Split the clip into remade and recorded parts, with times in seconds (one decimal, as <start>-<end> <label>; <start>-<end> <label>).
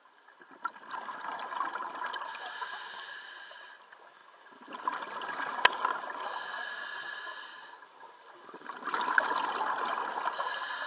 0.0-10.9 recorded